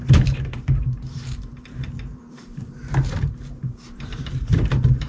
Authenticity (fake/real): fake